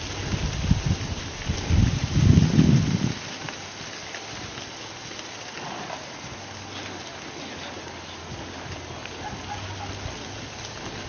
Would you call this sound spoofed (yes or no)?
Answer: no